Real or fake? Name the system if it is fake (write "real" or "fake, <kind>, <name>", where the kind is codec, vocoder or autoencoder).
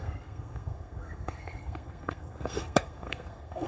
fake, codec, SNAC